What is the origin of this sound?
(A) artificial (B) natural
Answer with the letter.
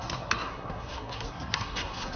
A